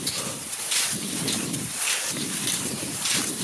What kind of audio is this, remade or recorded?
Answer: recorded